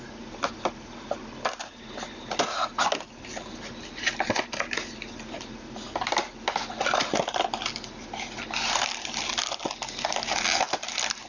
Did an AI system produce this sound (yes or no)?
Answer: no